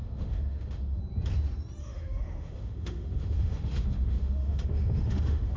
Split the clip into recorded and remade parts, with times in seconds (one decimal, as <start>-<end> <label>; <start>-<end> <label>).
0.0-1.0 remade; 1.0-1.8 recorded; 1.8-5.6 remade